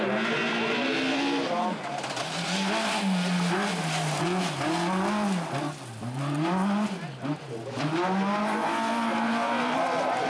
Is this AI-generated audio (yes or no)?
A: no